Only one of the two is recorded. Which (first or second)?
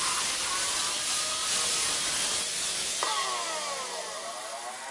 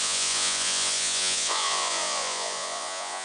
first